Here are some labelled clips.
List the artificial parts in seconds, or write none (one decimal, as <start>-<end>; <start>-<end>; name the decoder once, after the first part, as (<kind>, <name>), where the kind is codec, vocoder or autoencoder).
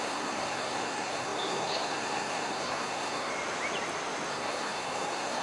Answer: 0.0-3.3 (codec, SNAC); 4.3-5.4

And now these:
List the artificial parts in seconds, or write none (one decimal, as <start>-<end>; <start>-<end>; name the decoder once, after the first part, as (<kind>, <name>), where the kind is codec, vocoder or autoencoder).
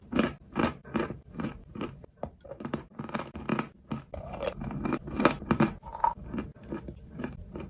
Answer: 0.0-3.5 (vocoder, BigVGAN v2); 4.1-5.9; 7.0-7.7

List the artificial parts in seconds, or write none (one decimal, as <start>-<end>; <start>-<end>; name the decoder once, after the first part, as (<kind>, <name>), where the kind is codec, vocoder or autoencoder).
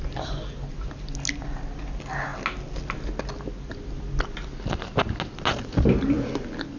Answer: none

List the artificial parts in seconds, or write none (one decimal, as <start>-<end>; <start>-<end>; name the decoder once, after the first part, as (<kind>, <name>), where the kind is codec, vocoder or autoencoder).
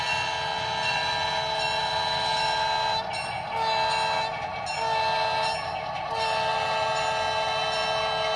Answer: none